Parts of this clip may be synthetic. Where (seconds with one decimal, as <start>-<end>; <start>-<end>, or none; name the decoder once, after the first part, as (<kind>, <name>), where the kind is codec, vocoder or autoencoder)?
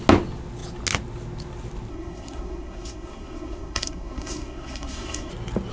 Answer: 1.9-5.3 (codec, SNAC)